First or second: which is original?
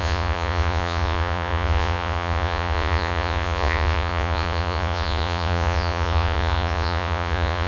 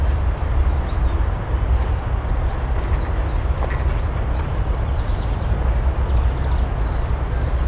second